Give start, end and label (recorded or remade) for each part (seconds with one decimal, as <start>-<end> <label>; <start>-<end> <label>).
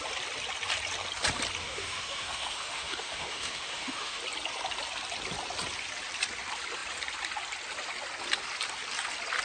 0.0-1.6 recorded; 1.6-4.2 remade; 4.2-9.4 recorded